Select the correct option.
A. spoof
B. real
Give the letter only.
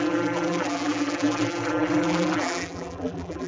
A